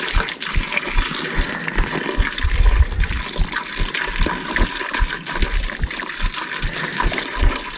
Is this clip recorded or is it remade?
recorded